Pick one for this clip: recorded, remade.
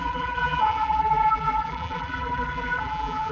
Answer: remade